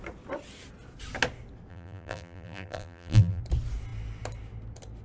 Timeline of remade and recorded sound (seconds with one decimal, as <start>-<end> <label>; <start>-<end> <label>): 0.0-1.7 recorded; 1.7-3.4 remade; 3.4-5.0 recorded